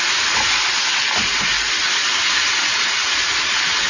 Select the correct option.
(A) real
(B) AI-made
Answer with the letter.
A